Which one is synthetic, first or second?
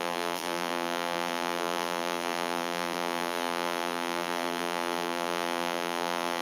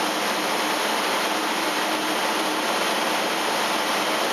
first